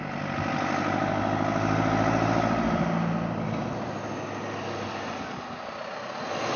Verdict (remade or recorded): recorded